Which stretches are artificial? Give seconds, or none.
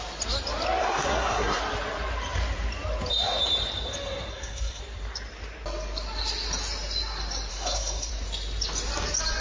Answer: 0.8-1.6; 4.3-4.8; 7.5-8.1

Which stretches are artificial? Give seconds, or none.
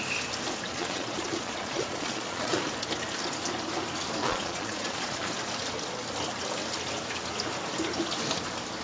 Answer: 0.7-2.6; 4.2-5.3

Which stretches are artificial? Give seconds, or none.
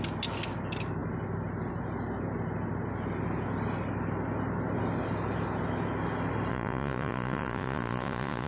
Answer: 6.5-8.5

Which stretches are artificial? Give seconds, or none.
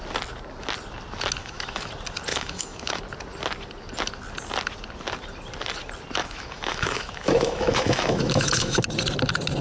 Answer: 1.4-1.9; 2.3-3.0; 6.2-8.8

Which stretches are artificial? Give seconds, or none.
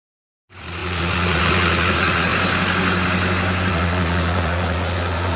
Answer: 0.0-2.3; 3.7-5.4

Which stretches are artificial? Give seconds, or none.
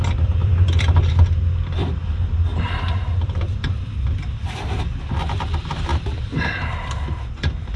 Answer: 0.4-1.1; 2.5-3.6